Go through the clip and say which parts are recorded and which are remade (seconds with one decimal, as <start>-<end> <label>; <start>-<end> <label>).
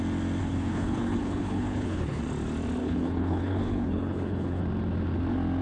0.0-0.4 recorded; 0.4-2.2 remade; 2.2-2.8 recorded; 2.8-4.6 remade; 4.6-5.6 recorded